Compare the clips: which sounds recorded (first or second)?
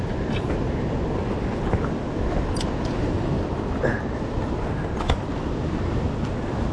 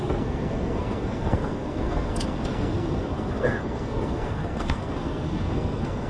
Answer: first